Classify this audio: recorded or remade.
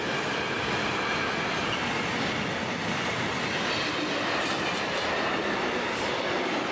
recorded